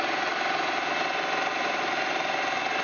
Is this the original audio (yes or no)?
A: yes